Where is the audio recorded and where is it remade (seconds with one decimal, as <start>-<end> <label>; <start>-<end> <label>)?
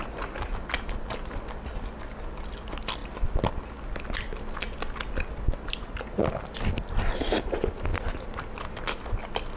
0.0-9.6 recorded